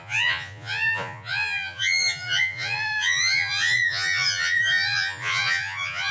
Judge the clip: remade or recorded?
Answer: remade